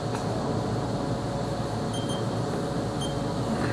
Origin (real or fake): real